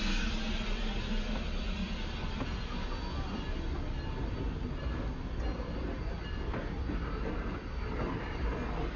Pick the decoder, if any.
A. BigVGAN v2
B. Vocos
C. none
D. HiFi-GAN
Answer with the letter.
C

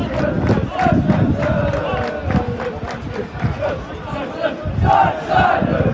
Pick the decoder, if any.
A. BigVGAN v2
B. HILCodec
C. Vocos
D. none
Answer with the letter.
D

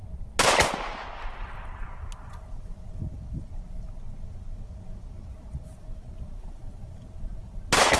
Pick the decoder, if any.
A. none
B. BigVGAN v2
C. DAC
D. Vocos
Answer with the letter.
A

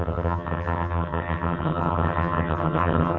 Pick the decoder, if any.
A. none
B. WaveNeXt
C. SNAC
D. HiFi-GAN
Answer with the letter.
D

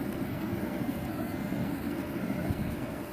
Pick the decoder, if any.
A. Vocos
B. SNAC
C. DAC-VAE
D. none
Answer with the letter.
B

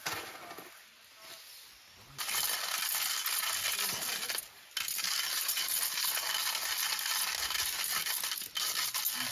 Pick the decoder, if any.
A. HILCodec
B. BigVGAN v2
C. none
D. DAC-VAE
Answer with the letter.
C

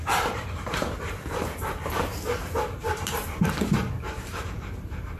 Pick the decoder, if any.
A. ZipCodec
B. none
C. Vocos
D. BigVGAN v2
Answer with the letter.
D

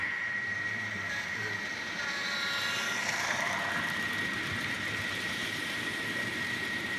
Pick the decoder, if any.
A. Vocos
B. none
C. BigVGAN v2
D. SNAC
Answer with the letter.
C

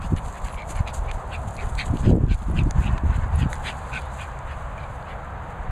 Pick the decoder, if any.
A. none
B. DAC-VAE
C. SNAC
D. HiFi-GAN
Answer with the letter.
A